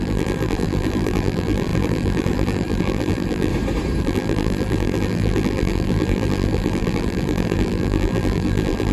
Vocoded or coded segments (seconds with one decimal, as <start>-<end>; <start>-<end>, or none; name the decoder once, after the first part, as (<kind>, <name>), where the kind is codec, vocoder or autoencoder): 0.0-3.5 (vocoder, BigVGAN v2); 4.0-8.9